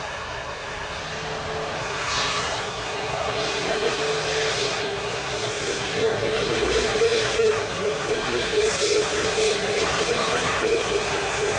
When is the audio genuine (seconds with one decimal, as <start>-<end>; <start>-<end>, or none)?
1.0-1.8; 4.0-4.5